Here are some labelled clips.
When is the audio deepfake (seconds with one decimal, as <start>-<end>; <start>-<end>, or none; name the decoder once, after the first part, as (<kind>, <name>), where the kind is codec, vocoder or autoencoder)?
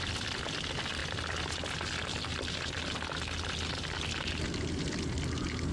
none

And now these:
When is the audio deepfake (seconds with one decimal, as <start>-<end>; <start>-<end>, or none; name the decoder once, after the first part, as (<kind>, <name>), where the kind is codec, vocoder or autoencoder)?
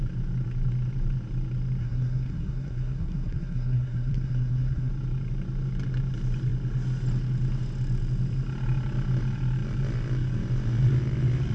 1.8-4.9 (codec, SNAC)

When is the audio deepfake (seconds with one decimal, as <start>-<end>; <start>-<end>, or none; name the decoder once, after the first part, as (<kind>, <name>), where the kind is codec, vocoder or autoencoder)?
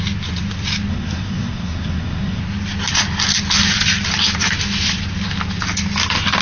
0.9-2.4 (codec, SNAC)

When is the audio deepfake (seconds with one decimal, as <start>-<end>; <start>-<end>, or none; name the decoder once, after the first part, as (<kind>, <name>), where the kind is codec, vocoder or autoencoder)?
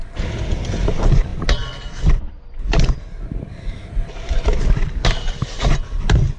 none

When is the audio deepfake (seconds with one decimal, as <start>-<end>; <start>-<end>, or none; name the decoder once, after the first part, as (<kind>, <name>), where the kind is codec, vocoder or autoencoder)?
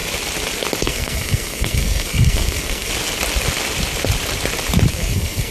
0.8-2.9 (codec, SNAC); 4.9-5.5